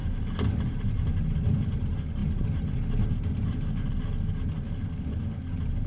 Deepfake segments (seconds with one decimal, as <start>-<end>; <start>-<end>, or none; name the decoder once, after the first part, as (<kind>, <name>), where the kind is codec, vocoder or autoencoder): none